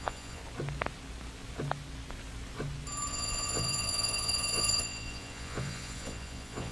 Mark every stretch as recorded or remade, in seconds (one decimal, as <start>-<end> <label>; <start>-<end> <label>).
0.0-0.4 remade; 0.4-3.1 recorded; 3.1-6.7 remade